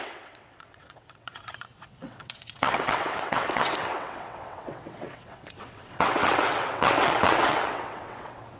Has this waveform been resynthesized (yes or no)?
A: yes